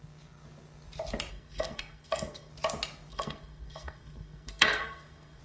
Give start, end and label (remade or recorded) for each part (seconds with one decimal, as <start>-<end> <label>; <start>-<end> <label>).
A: 0.0-1.3 recorded; 1.3-2.5 remade; 2.5-3.1 recorded; 3.1-5.4 remade